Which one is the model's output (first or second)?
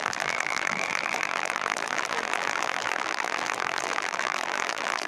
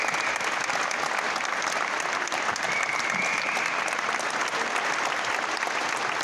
first